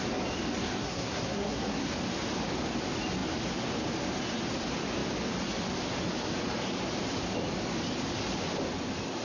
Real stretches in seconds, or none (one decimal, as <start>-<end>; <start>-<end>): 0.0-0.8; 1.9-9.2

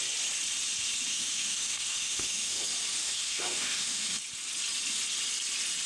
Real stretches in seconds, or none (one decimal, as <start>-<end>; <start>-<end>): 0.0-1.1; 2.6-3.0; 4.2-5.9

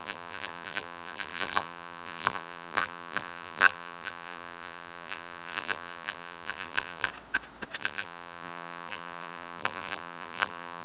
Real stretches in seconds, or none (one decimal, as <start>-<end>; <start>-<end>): 7.1-7.8

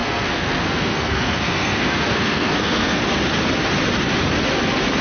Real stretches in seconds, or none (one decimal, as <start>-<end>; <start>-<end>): 3.0-5.0

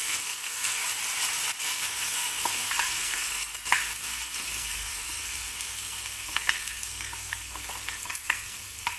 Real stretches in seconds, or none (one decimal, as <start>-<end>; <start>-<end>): 0.8-1.6